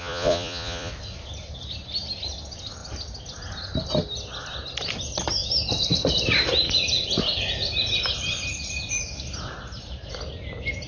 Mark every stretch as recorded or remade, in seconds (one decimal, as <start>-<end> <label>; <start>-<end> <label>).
0.0-0.9 remade; 0.9-10.9 recorded